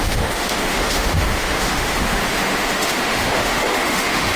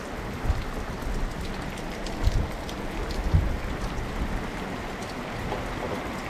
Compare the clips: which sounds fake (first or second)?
first